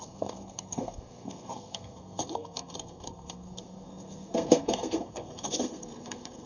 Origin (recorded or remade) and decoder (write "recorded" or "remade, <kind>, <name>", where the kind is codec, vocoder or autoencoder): remade, codec, SNAC